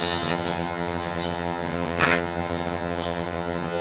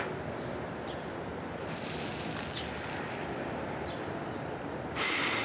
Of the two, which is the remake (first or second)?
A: first